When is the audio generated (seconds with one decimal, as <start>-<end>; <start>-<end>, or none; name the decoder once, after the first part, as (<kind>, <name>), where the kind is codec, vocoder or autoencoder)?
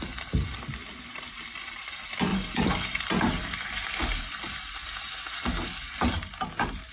0.5-1.6 (vocoder, BigVGAN v2); 2.3-4.8